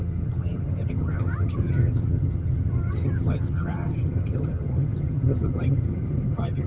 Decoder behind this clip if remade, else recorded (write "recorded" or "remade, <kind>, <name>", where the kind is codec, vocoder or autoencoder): remade, vocoder, HiFi-GAN